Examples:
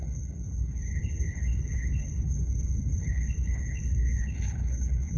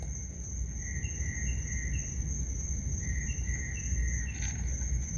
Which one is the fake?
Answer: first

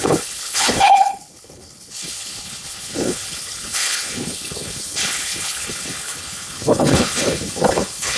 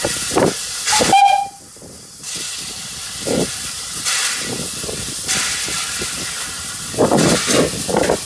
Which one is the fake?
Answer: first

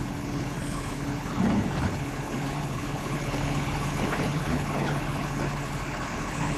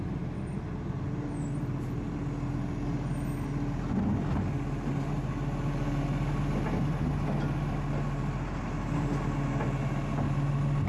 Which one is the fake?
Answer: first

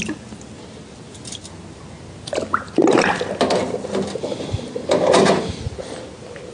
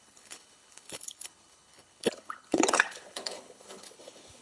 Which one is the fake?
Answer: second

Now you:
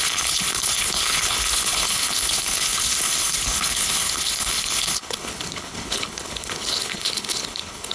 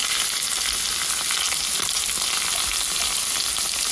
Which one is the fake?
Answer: first